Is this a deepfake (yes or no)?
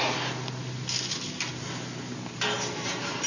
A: no